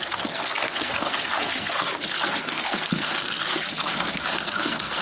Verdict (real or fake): fake